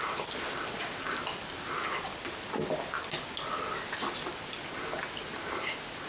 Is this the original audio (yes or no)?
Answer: yes